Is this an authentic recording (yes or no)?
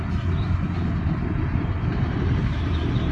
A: yes